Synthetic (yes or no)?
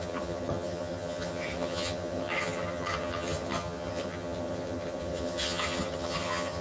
yes